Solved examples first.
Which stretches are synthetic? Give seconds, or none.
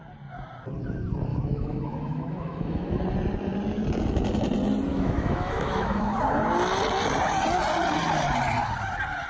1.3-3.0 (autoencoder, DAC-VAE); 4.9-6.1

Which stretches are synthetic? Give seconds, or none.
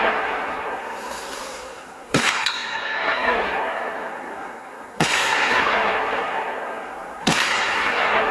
0.0-8.3 (codec, SNAC)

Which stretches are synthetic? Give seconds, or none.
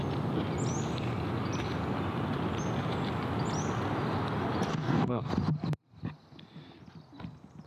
4.7-5.3 (codec, DAC)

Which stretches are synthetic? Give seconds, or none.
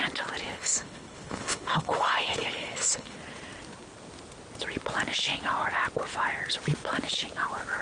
0.5-3.2 (codec, HILCodec)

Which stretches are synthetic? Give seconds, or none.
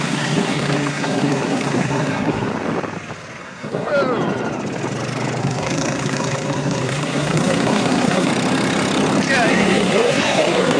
0.0-2.5 (codec, SNAC); 3.4-3.9; 5.4-8.3; 9.5-10.8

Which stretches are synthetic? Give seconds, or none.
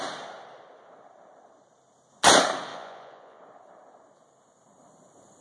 2.7-3.4 (vocoder, Vocos)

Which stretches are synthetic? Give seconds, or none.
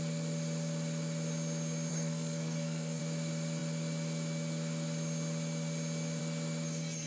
1.9-3.0 (codec, SNAC)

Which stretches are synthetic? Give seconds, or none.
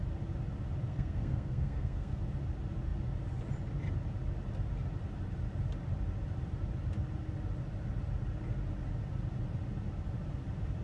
0.9-2.2 (codec, SNAC)